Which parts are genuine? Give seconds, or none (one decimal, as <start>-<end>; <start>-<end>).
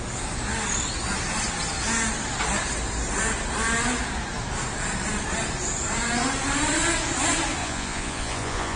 0.0-7.6